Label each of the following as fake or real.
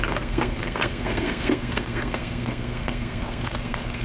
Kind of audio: fake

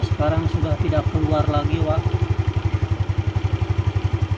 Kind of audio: real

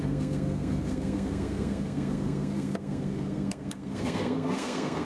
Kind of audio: fake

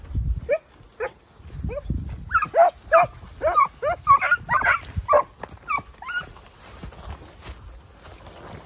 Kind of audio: real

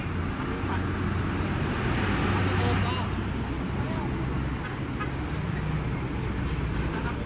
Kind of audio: real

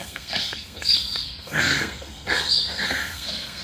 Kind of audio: fake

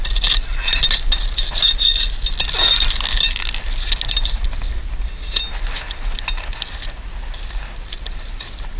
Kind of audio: real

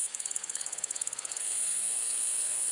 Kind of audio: fake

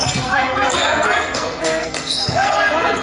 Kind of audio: fake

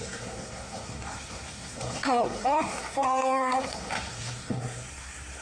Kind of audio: fake